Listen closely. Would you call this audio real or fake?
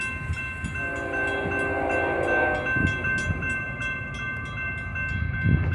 real